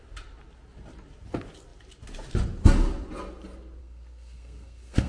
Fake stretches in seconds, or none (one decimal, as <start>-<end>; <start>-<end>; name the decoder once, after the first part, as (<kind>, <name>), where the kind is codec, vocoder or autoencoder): 3.8-5.1 (codec, SNAC)